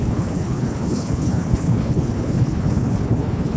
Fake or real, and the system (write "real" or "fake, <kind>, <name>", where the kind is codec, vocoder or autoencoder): fake, codec, HILCodec